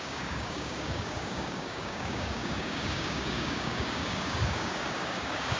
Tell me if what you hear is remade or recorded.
remade